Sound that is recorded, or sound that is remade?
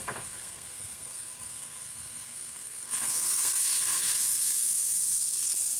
remade